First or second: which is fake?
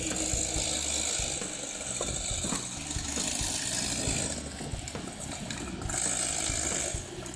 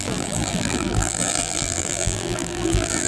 second